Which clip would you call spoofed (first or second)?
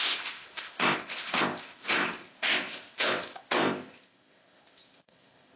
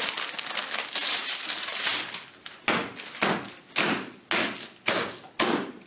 first